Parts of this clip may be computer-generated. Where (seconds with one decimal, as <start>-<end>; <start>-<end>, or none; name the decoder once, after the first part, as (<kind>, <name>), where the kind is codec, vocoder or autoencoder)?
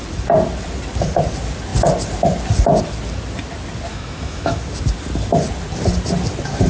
3.9-4.6 (autoencoder, DAC-VAE)